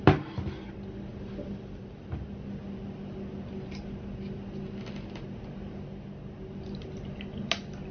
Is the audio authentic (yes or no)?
yes